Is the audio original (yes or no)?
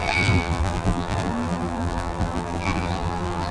no